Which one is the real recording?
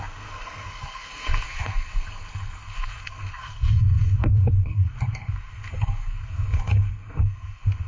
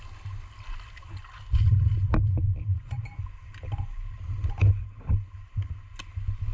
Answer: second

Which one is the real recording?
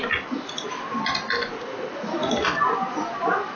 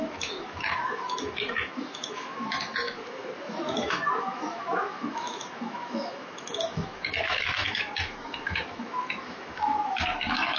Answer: first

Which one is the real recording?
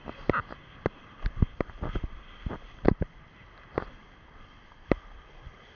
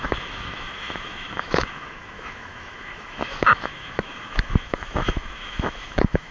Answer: first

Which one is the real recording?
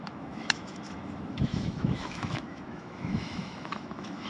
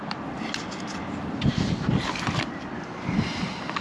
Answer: second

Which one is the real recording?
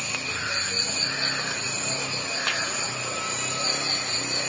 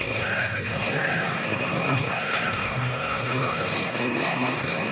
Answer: first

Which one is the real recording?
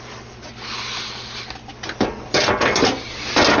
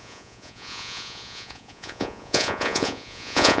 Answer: first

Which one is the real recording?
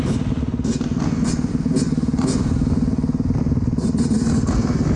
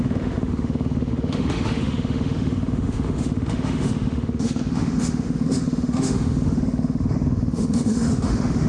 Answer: first